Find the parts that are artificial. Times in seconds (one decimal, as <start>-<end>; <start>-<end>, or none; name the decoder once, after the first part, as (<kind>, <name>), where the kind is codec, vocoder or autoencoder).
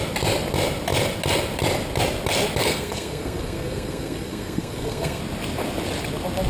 2.6-5.2 (codec, SNAC)